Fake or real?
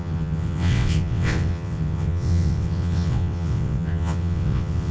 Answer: fake